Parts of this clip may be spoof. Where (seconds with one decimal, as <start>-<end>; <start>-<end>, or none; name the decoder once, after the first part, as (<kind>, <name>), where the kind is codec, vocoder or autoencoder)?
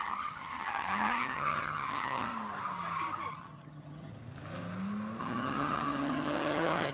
0.0-2.3 (vocoder, HiFi-GAN); 3.3-4.1; 5.2-6.9